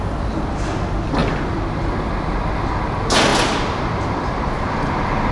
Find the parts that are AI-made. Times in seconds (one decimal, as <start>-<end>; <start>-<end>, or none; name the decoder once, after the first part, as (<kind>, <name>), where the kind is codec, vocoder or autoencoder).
none